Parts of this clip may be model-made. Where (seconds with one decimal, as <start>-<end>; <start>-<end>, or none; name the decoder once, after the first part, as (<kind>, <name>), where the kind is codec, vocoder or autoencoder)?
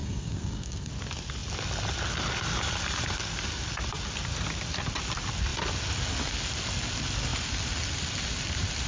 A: 0.0-0.9 (codec, SNAC)